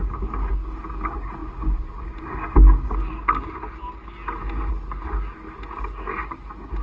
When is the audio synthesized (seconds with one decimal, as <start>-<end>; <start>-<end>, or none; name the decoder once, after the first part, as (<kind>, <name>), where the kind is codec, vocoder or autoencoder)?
none